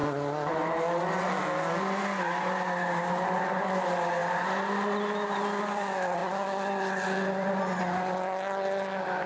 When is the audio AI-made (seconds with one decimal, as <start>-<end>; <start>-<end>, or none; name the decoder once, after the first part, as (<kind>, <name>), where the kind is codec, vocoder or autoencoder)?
none